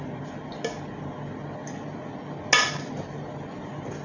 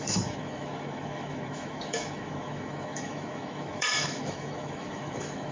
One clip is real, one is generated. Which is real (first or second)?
first